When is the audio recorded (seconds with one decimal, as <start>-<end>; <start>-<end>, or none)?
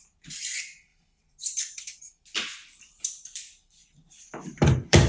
0.0-0.9; 2.0-3.8